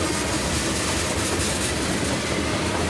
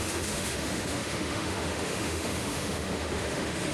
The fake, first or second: second